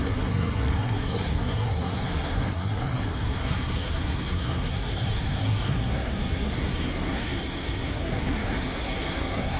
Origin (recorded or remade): remade